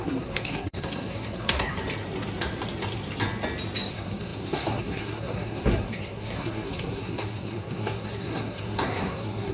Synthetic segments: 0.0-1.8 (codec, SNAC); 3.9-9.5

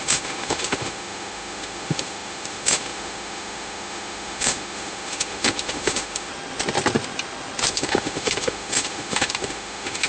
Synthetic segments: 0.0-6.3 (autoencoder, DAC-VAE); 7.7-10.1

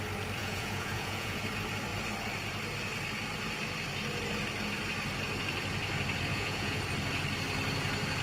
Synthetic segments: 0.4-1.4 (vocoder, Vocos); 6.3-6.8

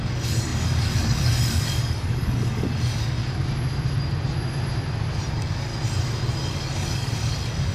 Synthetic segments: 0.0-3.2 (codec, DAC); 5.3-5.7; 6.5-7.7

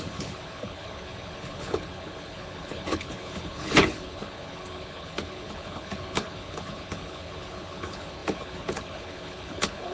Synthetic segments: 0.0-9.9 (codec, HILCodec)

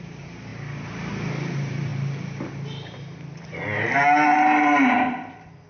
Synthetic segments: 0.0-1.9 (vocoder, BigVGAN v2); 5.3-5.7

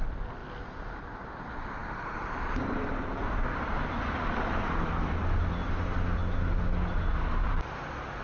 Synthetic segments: 0.0-6.2 (vocoder, BigVGAN v2); 7.5-8.2

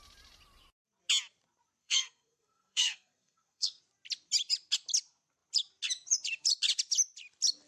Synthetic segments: 1.8-3.8 (codec, SNAC)